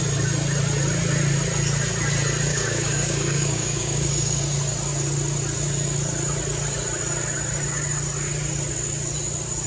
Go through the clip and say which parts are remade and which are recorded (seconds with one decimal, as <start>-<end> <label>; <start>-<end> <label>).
0.0-2.5 recorded; 2.5-4.4 remade; 4.4-9.7 recorded